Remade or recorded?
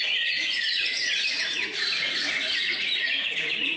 remade